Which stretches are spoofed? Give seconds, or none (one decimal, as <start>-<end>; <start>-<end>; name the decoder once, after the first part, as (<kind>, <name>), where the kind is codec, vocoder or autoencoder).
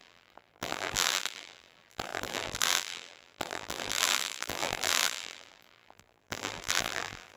0.0-7.4 (vocoder, BigVGAN v2)